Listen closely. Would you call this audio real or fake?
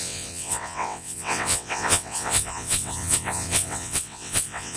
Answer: fake